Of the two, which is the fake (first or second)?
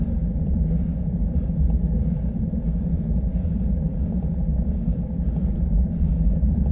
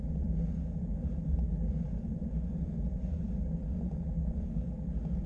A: first